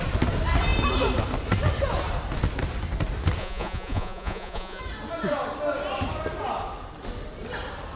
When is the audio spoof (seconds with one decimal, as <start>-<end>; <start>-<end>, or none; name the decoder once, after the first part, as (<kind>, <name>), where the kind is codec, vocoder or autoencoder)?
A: 3.4-4.8 (vocoder, Vocos)

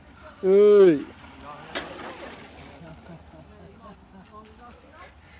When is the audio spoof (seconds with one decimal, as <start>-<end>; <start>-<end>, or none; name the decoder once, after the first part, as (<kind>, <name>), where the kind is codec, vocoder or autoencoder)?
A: none